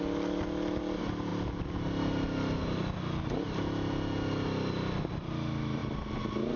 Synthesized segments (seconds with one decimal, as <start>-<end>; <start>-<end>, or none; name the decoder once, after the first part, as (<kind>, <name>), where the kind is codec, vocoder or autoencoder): none